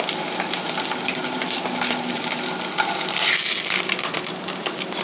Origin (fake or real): real